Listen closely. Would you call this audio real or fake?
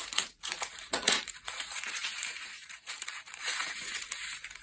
fake